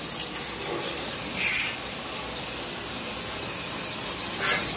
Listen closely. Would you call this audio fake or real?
real